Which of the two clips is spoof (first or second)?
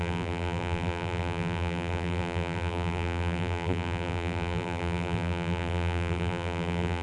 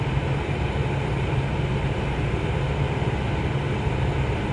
first